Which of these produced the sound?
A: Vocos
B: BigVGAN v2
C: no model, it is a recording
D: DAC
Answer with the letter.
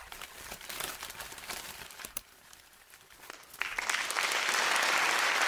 C